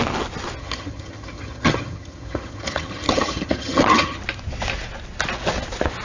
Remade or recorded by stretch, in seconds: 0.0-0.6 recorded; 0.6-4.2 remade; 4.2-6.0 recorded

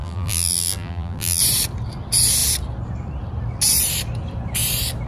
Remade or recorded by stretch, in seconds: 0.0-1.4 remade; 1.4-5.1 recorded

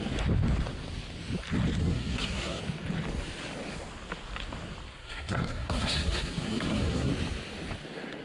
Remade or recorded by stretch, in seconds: 0.0-1.8 recorded; 1.8-2.6 remade; 2.6-5.0 recorded; 5.0-7.1 remade; 7.1-8.2 recorded

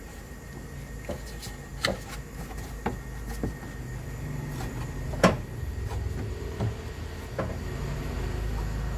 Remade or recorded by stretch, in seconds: 0.0-9.0 recorded

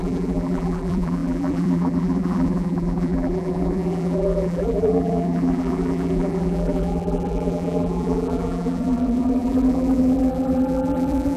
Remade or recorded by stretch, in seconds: 0.0-11.4 remade